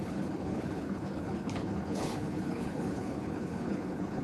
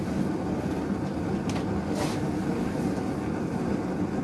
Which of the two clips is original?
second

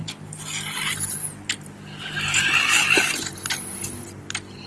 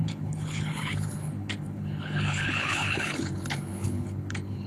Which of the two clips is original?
first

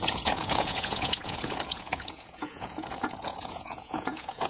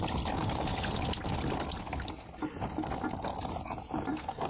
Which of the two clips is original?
second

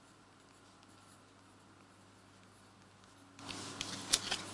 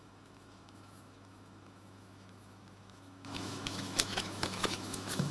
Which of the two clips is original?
first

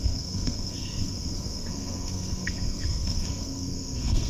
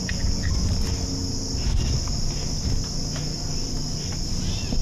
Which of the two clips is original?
second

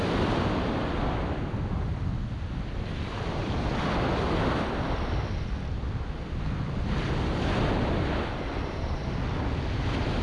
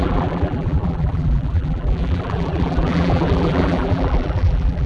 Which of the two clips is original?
first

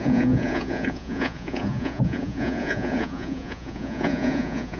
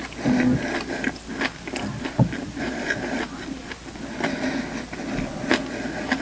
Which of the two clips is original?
second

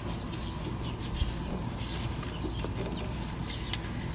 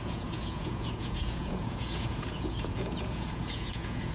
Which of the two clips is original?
first